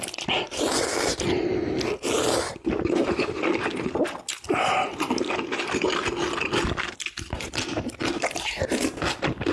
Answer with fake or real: real